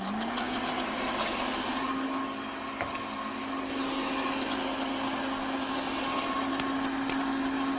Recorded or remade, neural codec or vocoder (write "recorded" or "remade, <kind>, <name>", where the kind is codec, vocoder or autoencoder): recorded